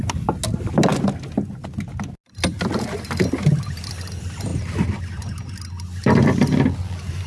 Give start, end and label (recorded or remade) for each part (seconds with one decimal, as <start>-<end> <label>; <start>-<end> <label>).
0.0-7.3 recorded